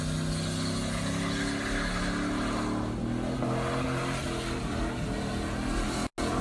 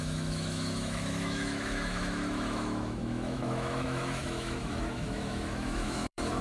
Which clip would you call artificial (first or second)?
second